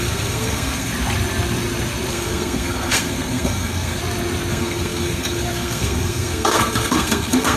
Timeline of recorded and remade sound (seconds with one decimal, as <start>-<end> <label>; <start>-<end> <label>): 0.0-0.9 remade; 0.9-2.1 recorded; 2.1-4.0 remade; 4.0-4.5 recorded; 4.5-7.6 remade